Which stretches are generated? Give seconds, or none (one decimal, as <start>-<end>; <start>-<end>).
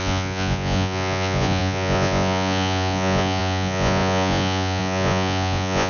0.0-5.9